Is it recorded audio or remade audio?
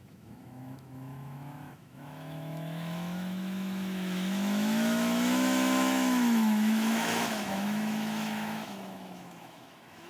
remade